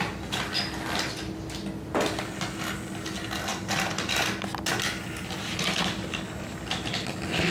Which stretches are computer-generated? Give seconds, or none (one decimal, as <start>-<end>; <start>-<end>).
none